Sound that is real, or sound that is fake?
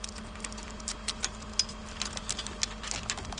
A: real